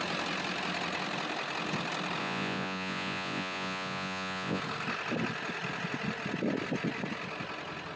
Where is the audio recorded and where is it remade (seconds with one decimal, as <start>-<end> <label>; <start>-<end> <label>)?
0.0-2.2 recorded; 2.2-4.6 remade; 4.6-8.0 recorded